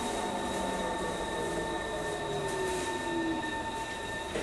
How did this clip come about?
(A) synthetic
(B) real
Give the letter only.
B